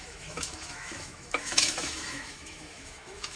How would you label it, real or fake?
fake